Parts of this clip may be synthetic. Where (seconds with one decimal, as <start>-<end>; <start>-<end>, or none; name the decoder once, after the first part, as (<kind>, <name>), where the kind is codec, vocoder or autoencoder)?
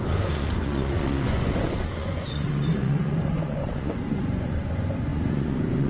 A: 0.0-5.9 (vocoder, Vocos)